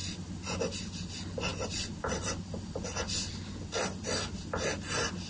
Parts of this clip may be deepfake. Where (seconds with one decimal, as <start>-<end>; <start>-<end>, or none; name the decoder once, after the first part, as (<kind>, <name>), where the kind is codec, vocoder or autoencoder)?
none